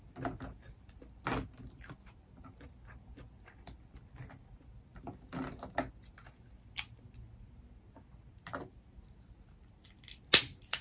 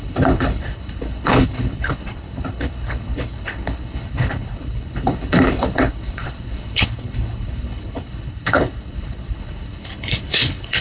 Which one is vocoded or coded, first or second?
second